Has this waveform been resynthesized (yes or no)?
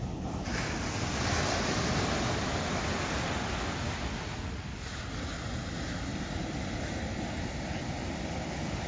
no